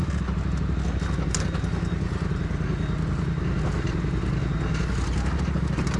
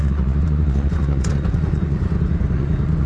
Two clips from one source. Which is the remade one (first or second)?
second